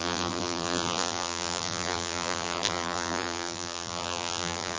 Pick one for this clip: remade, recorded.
remade